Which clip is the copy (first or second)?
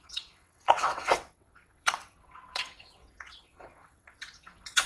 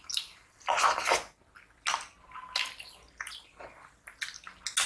first